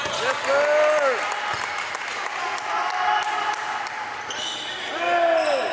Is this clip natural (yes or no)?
yes